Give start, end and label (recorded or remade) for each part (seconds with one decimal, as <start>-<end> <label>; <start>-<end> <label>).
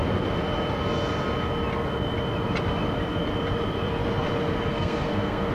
0.0-4.7 recorded; 4.7-5.5 remade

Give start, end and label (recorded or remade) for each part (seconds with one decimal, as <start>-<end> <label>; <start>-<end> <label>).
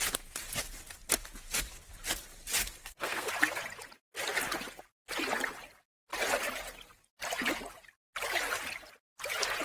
0.0-2.8 recorded; 2.8-3.3 remade; 3.3-9.6 recorded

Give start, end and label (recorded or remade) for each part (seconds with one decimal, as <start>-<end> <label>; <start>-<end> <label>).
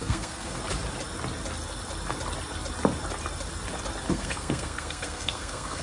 0.0-0.6 remade; 0.6-4.1 recorded; 4.1-5.8 remade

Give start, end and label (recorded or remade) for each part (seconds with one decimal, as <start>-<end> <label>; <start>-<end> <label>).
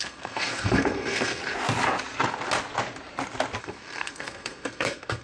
0.0-1.4 remade; 1.4-3.6 recorded; 3.6-5.2 remade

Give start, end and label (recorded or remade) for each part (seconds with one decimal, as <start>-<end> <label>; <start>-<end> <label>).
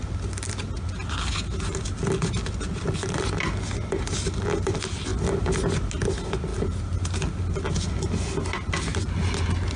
0.0-9.8 recorded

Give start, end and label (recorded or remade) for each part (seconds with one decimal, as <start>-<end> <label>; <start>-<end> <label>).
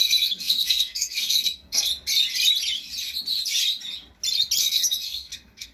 0.0-1.9 remade; 1.9-4.6 recorded; 4.6-5.7 remade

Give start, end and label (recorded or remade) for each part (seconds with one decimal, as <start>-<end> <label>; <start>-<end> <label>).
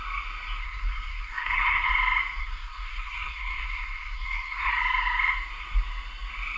0.0-0.6 recorded; 0.6-1.9 remade; 1.9-2.4 recorded; 2.4-4.7 remade; 4.7-6.6 recorded